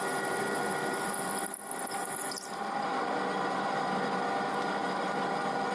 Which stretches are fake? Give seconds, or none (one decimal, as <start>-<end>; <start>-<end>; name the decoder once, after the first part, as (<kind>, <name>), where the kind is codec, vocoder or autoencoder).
none